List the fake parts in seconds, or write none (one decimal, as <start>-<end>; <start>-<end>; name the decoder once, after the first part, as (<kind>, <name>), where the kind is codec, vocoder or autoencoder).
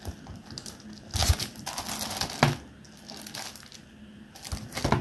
none